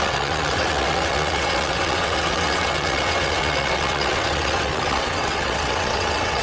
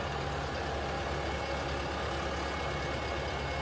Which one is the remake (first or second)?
first